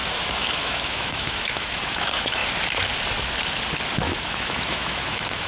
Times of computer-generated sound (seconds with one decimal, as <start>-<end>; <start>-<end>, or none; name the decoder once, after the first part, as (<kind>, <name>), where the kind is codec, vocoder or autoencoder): 0.0-2.4 (autoencoder, DAC-VAE); 4.0-5.5